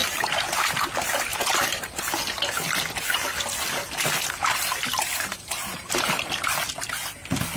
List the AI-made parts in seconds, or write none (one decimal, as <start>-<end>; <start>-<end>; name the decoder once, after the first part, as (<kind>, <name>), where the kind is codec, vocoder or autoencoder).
0.0-0.9 (vocoder, BigVGAN v2); 1.3-1.8; 4.4-6.5